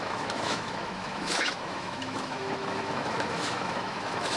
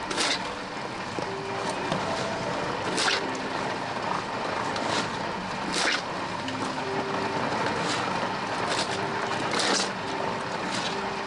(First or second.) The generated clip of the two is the first